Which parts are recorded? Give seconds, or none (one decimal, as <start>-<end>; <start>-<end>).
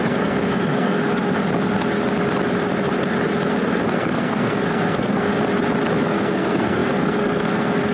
1.4-3.5; 5.3-6.0